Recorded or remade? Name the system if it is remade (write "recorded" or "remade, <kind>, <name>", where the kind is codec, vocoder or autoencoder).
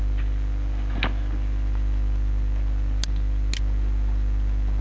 recorded